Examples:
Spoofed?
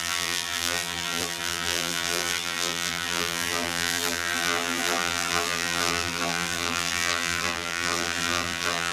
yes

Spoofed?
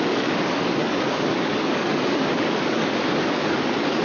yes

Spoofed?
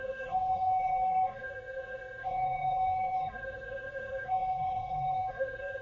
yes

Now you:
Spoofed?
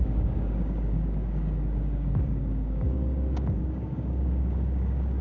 yes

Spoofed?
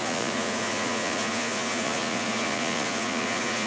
yes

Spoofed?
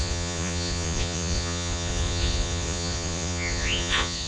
yes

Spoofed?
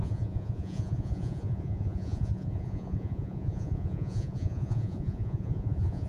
yes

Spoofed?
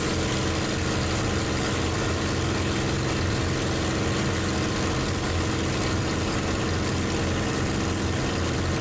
no